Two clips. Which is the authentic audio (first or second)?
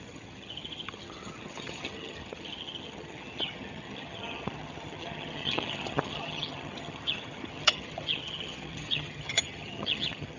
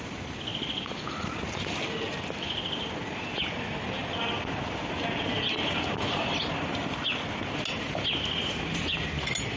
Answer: second